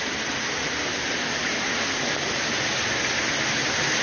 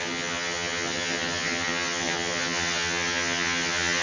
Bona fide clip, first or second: first